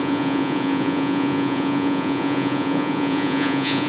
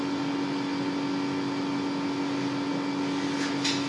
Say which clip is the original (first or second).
second